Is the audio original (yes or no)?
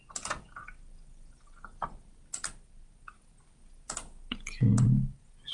yes